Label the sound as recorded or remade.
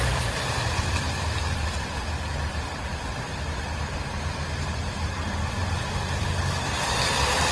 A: remade